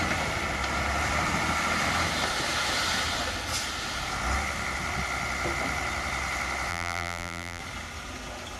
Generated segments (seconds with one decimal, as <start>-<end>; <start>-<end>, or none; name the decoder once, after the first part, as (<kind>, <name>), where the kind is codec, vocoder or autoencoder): 6.7-7.6 (vocoder, BigVGAN v2)